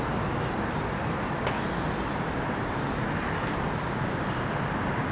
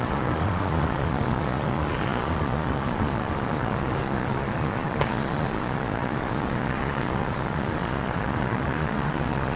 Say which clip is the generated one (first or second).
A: second